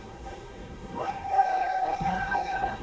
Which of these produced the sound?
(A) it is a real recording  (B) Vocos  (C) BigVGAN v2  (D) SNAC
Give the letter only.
D